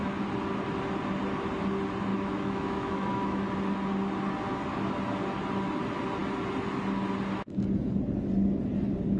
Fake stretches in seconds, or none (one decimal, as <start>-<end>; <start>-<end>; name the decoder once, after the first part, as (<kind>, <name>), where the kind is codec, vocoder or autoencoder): 2.1-3.4 (autoencoder, DAC-VAE)